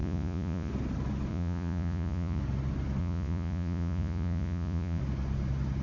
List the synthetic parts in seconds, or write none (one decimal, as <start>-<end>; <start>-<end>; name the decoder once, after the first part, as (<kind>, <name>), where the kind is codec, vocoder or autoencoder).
0.0-0.7 (vocoder, Vocos); 1.3-2.4; 3.0-5.0